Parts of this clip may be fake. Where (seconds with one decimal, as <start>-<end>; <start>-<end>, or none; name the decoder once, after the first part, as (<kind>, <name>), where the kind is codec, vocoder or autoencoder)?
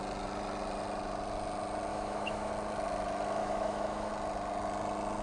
1.9-2.5 (autoencoder, DAC-VAE); 3.4-4.1